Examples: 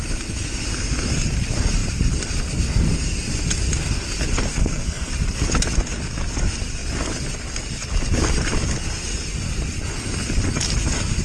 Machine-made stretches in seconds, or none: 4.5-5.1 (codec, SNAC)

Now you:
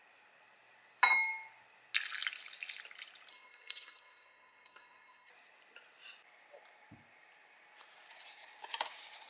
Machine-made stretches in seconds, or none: 3.3-5.3 (codec, SNAC)